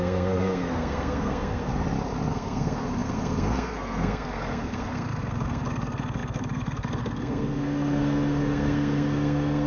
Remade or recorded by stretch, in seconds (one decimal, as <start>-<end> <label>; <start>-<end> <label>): 0.0-1.7 remade; 1.7-2.3 recorded; 2.3-9.7 remade